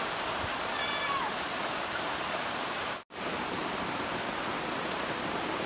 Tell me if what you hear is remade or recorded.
remade